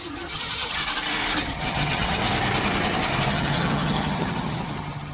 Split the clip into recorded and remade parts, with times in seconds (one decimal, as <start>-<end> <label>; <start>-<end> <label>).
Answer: 0.0-0.8 remade; 0.8-1.4 recorded; 1.4-2.2 remade; 2.2-3.3 recorded; 3.3-5.1 remade